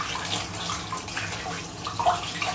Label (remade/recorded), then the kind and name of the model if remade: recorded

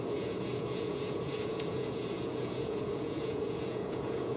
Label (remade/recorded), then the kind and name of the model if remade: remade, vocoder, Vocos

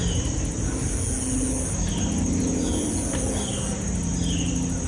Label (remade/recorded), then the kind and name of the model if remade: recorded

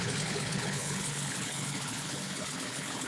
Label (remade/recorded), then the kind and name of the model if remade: remade, codec, HILCodec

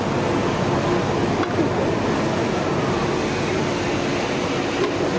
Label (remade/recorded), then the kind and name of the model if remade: recorded